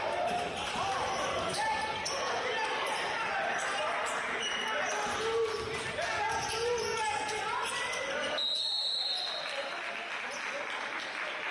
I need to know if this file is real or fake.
real